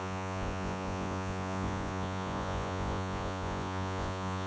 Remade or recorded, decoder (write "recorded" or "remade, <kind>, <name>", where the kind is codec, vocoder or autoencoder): remade, vocoder, Vocos